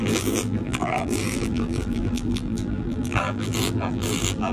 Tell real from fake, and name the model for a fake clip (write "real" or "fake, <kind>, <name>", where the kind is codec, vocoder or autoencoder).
fake, vocoder, BigVGAN v2